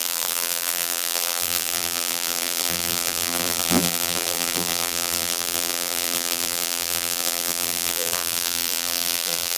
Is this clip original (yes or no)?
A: no